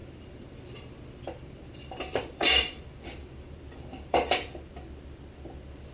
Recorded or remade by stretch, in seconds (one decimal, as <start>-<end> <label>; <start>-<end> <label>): 0.0-3.5 remade; 3.5-3.9 recorded; 3.9-4.5 remade; 4.5-5.9 recorded

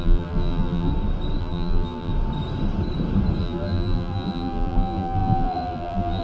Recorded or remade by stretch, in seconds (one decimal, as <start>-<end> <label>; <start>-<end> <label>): 0.0-0.9 remade; 0.9-1.4 recorded; 1.4-2.1 remade; 2.1-3.4 recorded; 3.4-6.2 remade

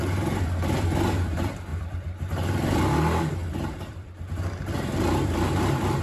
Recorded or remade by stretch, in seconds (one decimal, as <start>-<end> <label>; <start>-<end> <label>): 0.0-1.7 recorded; 1.7-2.8 remade; 2.8-3.4 recorded; 3.4-6.0 remade

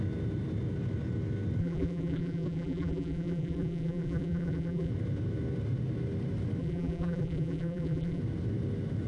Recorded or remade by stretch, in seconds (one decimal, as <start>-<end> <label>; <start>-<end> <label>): 0.0-1.6 recorded; 1.6-4.9 remade; 4.9-6.6 recorded; 6.6-8.2 remade; 8.2-9.1 recorded

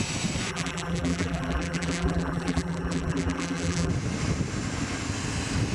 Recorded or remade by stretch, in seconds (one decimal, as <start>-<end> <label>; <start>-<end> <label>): 0.0-0.5 recorded; 0.5-3.9 remade; 3.9-5.7 recorded